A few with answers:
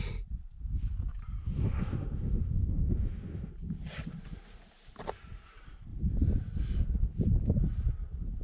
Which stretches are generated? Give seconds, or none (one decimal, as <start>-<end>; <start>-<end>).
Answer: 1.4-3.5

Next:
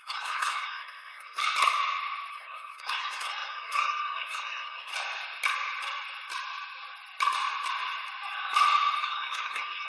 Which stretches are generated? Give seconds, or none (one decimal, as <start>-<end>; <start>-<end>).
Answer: 0.0-1.4; 2.3-4.9; 9.0-9.9

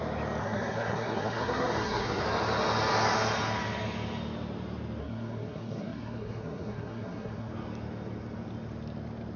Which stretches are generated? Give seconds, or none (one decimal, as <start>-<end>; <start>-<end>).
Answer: 0.4-2.2; 5.0-7.5

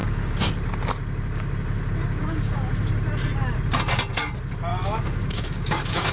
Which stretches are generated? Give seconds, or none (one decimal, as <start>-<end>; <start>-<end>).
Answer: 0.0-0.5; 2.2-2.7; 4.7-6.1